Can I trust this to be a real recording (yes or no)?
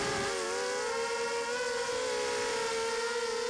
yes